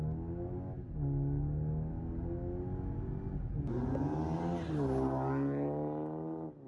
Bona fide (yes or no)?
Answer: yes